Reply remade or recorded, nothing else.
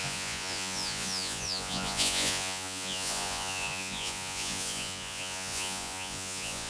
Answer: remade